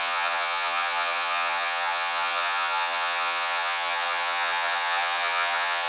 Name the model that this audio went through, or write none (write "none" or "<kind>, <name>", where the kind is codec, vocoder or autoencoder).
vocoder, HiFi-GAN